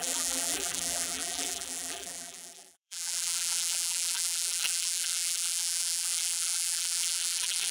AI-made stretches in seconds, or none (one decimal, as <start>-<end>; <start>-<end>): 0.0-7.7